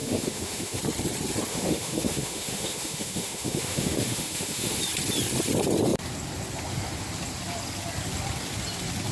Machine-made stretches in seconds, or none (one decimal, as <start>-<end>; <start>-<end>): 0.0-0.8; 1.5-4.8